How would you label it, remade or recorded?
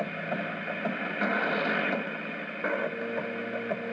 recorded